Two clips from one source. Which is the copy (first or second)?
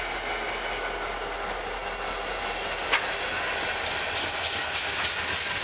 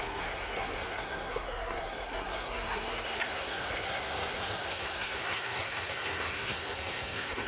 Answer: second